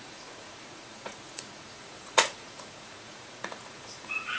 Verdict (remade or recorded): remade